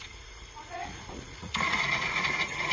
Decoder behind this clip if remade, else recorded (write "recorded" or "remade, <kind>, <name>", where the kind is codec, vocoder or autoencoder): remade, vocoder, Vocos